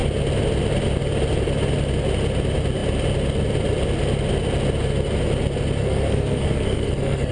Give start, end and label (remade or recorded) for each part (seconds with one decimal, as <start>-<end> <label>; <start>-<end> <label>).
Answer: 0.0-5.8 recorded; 5.8-7.3 remade